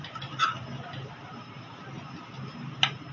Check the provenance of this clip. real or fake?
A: real